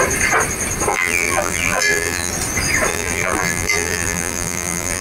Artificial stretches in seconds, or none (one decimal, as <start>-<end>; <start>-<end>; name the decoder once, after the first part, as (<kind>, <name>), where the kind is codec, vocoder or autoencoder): 0.9-2.3 (vocoder, BigVGAN v2); 2.9-5.0